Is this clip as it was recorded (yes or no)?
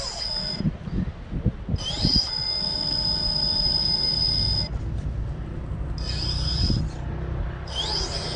yes